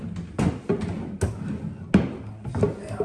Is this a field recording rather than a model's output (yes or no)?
yes